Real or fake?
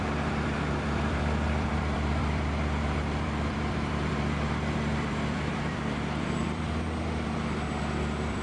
fake